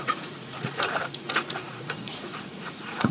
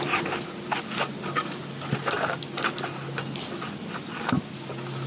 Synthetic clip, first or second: first